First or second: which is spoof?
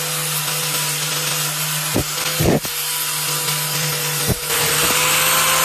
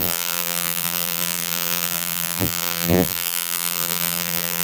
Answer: second